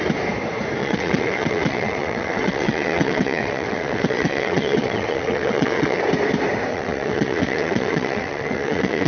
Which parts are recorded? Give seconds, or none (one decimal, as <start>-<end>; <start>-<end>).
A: 0.0-0.8; 6.0-6.7